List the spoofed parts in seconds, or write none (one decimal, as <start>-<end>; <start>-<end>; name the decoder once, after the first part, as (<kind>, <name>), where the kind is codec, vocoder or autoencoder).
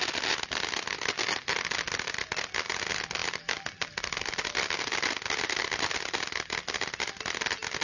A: none